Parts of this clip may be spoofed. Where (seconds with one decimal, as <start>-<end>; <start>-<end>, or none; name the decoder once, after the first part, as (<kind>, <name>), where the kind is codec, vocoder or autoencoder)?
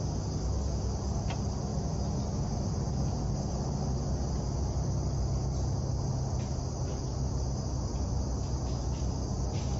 none